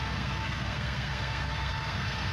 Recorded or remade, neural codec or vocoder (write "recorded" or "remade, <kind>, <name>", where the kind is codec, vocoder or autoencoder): remade, codec, SNAC